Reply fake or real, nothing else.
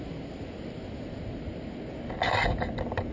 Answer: real